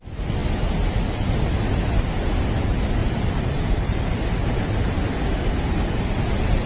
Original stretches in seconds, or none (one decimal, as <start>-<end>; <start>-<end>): 0.0-3.0; 4.2-6.7